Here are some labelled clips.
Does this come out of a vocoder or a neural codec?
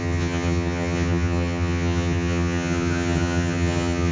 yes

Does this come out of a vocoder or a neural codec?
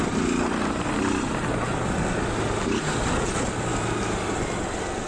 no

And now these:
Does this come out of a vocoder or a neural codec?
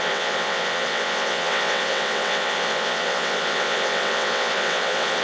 yes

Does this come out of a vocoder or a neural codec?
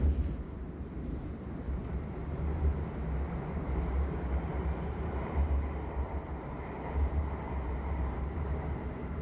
yes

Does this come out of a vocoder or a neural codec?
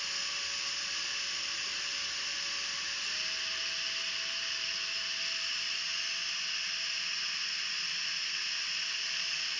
no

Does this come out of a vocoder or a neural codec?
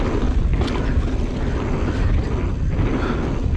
no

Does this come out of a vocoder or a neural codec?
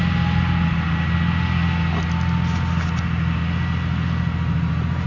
no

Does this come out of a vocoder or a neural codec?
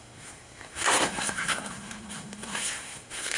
yes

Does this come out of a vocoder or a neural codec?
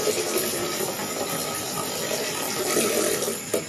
no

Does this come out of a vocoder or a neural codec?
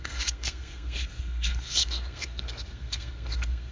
yes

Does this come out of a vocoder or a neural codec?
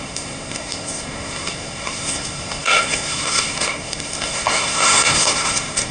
yes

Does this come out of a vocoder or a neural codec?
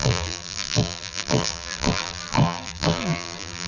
yes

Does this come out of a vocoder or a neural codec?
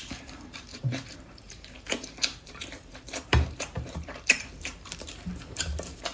yes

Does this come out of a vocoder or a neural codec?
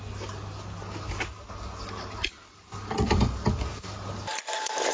no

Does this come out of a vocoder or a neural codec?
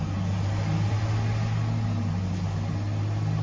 no